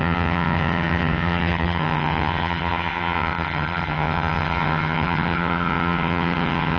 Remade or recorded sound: remade